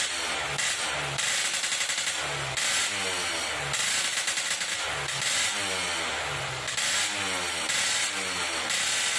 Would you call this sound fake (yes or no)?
no